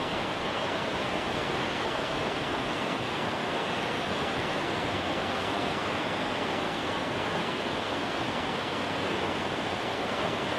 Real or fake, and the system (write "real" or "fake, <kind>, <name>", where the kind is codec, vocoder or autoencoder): fake, codec, SNAC